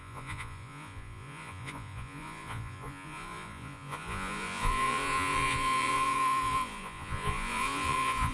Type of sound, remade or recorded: remade